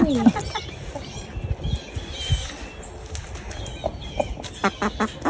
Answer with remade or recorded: recorded